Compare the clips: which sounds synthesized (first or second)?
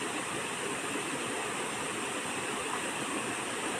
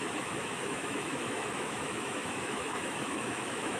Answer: second